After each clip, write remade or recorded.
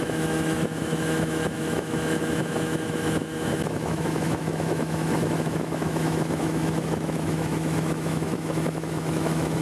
remade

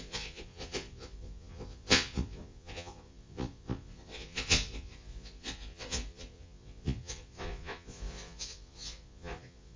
remade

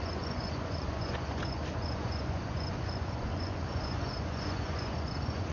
remade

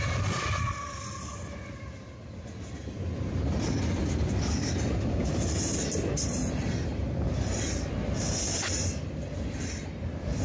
recorded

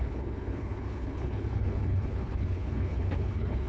remade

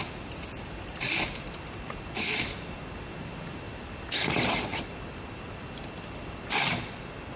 recorded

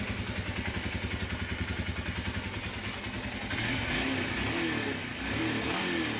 recorded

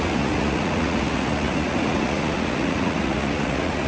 remade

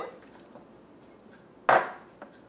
recorded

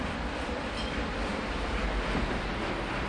recorded